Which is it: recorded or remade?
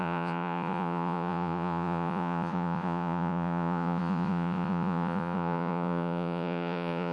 remade